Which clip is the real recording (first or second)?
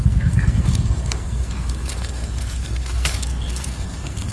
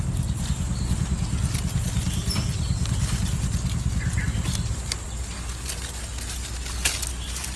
second